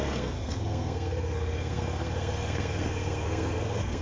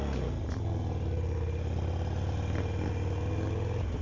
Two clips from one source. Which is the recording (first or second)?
second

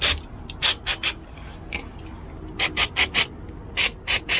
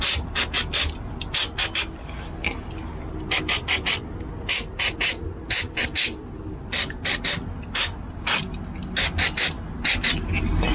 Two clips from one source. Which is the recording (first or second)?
second